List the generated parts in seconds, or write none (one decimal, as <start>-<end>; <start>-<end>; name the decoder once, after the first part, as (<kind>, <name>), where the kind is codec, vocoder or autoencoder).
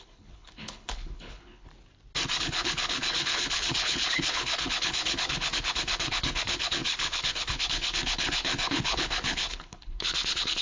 0.0-1.7 (codec, HILCodec); 2.4-10.6